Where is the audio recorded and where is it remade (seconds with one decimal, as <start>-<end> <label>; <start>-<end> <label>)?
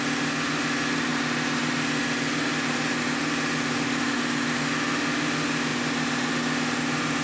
0.0-7.2 recorded